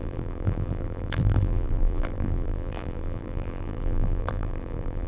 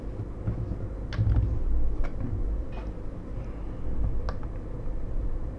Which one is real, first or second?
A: second